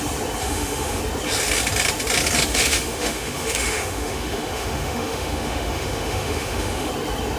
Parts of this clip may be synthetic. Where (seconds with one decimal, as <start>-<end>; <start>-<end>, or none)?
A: 0.4-1.0; 2.5-6.9